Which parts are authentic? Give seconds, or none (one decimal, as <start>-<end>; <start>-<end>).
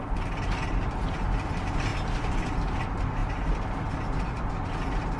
0.0-5.2